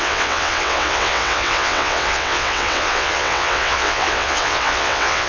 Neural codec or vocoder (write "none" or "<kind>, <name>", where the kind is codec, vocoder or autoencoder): vocoder, WaveNeXt